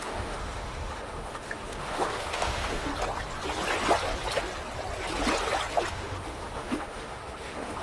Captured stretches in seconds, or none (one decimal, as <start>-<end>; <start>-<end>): 2.9-5.9